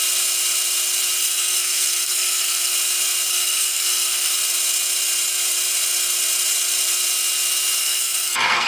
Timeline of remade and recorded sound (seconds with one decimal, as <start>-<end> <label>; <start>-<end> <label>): 0.0-1.2 recorded; 1.2-2.7 remade; 2.7-3.3 recorded; 3.3-4.3 remade; 4.3-7.8 recorded; 7.8-8.7 remade